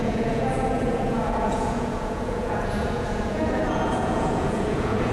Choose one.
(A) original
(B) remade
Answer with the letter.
B